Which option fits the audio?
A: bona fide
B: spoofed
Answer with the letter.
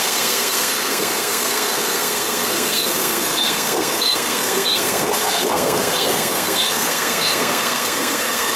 B